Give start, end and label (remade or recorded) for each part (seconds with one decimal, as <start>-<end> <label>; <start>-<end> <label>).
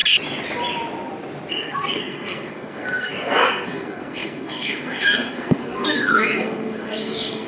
0.0-1.5 recorded; 1.5-7.5 remade